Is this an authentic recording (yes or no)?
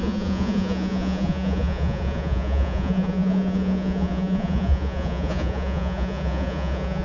no